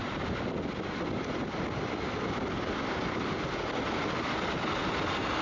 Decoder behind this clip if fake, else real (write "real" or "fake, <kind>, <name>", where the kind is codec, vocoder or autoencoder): real